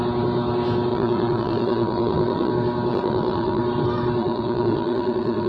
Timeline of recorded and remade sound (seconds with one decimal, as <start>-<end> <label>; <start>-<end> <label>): 0.0-0.9 recorded; 0.9-2.5 remade; 2.5-2.9 recorded; 2.9-3.6 remade; 3.6-4.2 recorded; 4.2-5.5 remade